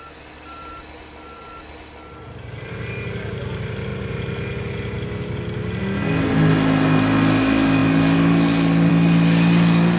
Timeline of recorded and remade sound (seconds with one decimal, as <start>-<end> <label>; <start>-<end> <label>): 0.0-10.0 recorded